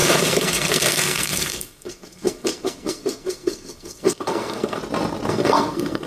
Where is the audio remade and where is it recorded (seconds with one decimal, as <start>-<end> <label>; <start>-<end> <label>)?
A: 0.0-4.8 remade; 4.8-5.3 recorded; 5.3-6.1 remade